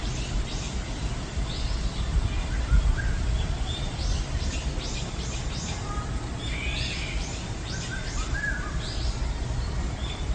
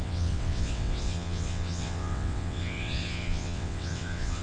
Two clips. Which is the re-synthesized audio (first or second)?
second